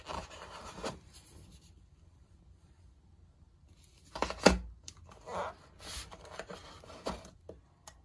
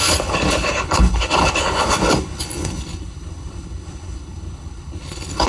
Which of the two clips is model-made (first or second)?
second